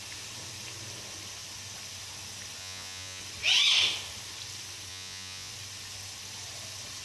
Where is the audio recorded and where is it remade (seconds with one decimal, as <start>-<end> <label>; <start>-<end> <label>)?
0.0-2.6 recorded; 2.6-3.2 remade; 3.2-4.9 recorded; 4.9-5.5 remade; 5.5-7.0 recorded

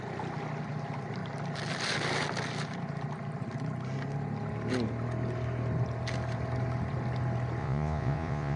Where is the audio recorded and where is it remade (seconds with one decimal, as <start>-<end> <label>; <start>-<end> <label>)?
0.0-7.6 recorded; 7.6-8.6 remade

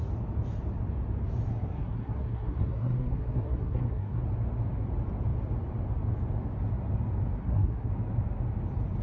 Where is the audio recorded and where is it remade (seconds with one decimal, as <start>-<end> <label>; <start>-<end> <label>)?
0.0-1.5 recorded; 1.5-4.2 remade; 4.2-7.4 recorded; 7.4-7.9 remade; 7.9-9.0 recorded

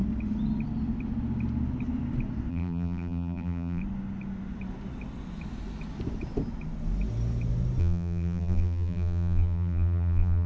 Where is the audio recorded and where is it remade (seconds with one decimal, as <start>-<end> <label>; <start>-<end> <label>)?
0.0-2.5 recorded; 2.5-3.8 remade; 3.8-7.8 recorded; 7.8-10.5 remade

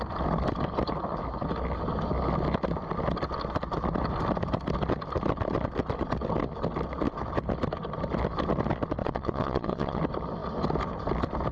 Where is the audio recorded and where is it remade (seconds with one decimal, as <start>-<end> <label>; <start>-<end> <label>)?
0.0-9.0 recorded; 9.0-10.0 remade; 10.0-11.5 recorded